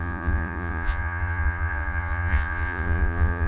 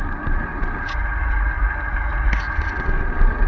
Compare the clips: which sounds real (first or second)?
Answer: second